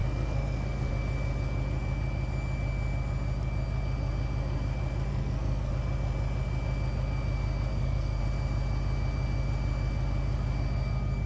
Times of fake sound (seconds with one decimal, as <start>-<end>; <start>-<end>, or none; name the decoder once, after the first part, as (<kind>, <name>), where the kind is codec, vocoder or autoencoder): 0.0-0.9 (codec, SNAC); 5.1-5.7; 7.7-8.2